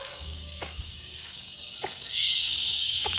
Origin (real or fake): fake